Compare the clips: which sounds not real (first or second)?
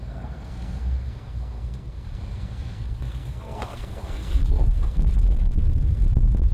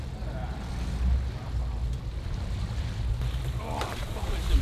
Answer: first